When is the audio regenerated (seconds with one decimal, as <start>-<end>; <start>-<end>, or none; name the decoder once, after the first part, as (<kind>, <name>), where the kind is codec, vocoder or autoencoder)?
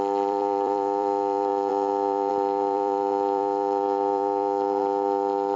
0.0-5.6 (vocoder, BigVGAN v2)